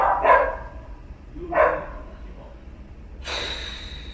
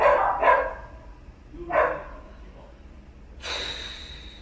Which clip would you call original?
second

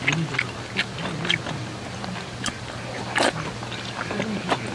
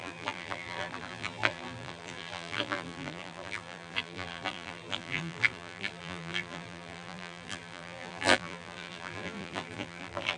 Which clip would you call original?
first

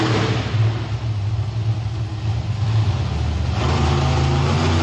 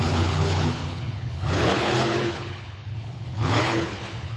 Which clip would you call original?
first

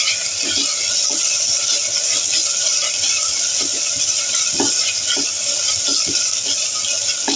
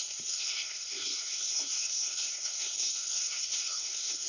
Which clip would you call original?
first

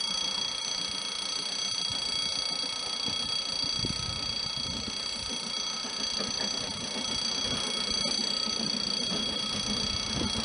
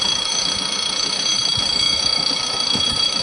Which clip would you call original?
first